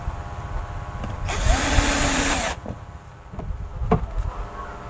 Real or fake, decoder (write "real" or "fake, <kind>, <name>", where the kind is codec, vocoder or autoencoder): real